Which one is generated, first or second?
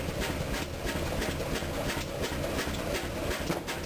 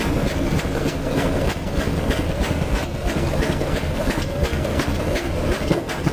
second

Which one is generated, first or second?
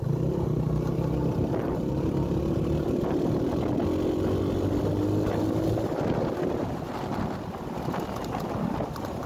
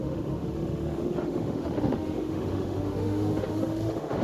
second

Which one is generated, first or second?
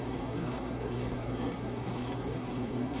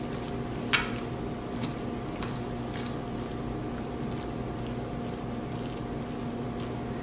first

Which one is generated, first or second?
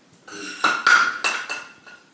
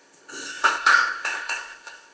second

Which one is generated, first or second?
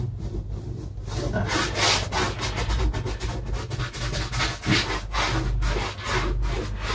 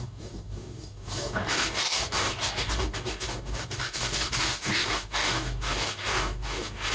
second